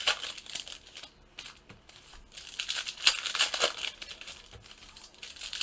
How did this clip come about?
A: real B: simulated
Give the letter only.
A